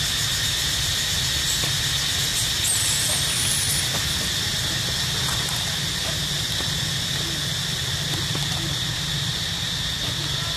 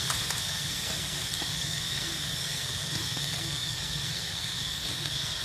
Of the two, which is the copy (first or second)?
second